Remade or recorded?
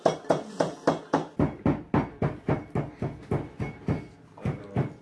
recorded